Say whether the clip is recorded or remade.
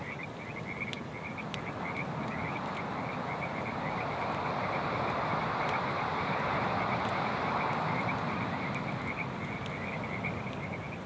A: recorded